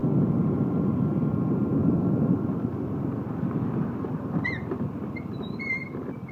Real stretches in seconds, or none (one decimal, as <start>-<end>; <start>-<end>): 1.3-1.8; 5.6-6.3

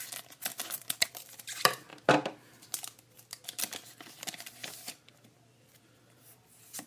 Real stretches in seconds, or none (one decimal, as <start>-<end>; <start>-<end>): 0.0-6.9

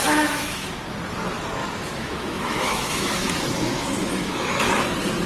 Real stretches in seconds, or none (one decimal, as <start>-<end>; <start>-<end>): 0.7-1.6; 4.8-5.3

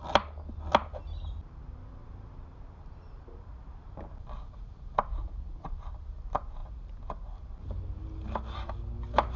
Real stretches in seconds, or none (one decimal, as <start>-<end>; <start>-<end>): 0.0-9.4

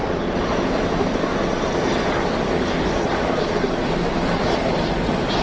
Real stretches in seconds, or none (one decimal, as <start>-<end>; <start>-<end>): 0.0-5.4

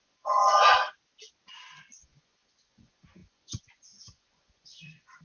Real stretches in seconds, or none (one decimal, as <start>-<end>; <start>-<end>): 0.4-2.0

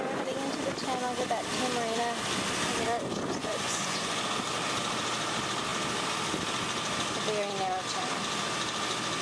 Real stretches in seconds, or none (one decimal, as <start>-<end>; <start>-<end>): 0.0-3.4; 4.2-9.2

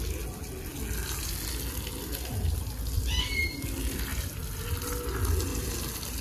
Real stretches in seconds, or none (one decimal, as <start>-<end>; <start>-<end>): 0.0-4.1; 4.6-5.5